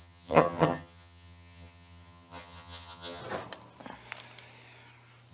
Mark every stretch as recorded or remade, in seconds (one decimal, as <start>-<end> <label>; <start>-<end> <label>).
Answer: 0.0-3.2 remade; 3.2-5.3 recorded